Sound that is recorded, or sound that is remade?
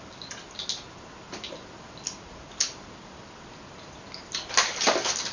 recorded